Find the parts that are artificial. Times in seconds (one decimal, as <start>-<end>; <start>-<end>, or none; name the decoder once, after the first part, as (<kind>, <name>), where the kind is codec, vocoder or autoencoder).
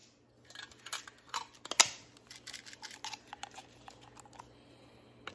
none